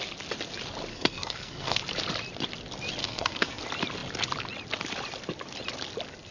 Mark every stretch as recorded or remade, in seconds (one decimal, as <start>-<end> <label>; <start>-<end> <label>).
0.0-0.9 recorded; 0.9-1.8 remade; 1.8-3.0 recorded; 3.0-3.6 remade; 3.6-6.3 recorded

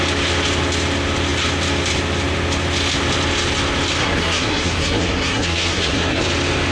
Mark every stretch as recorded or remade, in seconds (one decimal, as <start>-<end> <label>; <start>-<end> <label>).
0.0-4.0 recorded; 4.0-6.2 remade; 6.2-6.7 recorded

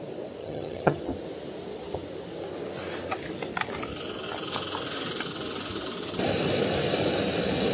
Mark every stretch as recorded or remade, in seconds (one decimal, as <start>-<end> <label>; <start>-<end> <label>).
0.0-0.4 recorded; 0.4-1.0 remade; 1.0-7.7 recorded

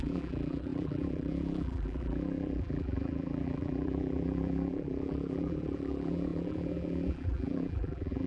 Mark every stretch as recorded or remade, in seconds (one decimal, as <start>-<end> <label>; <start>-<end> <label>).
0.0-8.3 remade